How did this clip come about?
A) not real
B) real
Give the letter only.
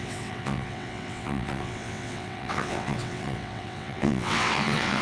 A